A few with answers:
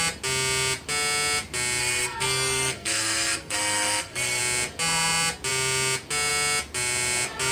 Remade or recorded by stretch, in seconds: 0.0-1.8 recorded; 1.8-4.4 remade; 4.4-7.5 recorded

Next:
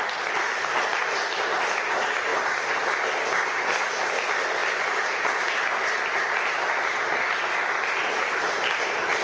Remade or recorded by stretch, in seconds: 0.0-9.2 recorded

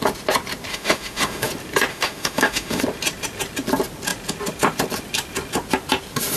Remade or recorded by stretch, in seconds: 0.0-0.7 recorded; 0.7-1.5 remade; 1.5-1.9 recorded; 1.9-2.8 remade; 2.8-6.4 recorded

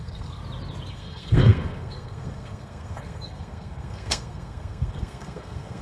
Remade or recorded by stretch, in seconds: 0.0-0.4 remade; 0.4-0.9 recorded; 0.9-5.8 remade

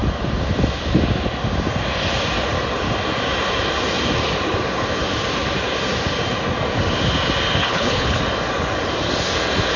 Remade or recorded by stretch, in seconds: 0.0-7.6 recorded; 7.6-8.2 remade; 8.2-9.8 recorded

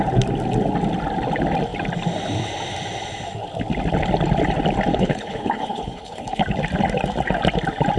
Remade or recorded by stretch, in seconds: 0.0-4.9 recorded; 4.9-6.4 remade; 6.4-8.0 recorded